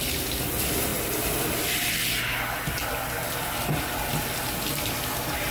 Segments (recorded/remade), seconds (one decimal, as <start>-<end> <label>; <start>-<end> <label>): 0.0-5.5 recorded